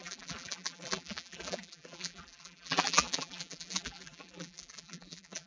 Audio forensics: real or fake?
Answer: fake